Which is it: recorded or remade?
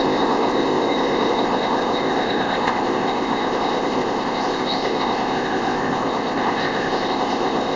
remade